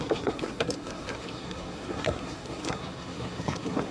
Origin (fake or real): fake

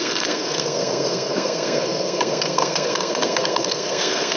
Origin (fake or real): fake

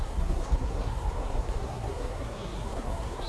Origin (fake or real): fake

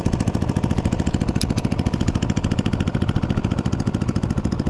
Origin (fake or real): real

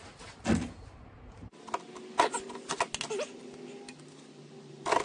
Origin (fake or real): real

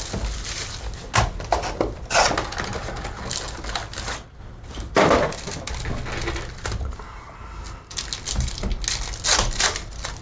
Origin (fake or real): real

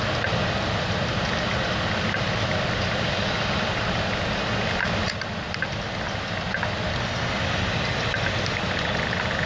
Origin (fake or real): real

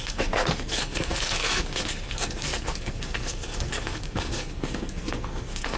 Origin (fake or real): fake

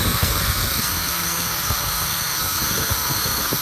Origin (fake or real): fake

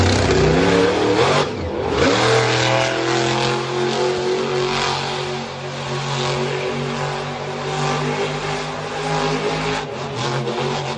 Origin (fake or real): real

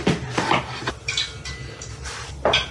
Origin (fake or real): real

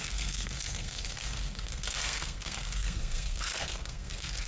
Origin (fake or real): fake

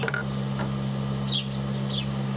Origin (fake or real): real